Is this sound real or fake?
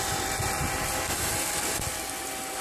real